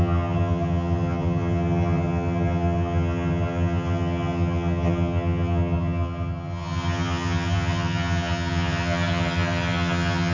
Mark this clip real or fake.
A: fake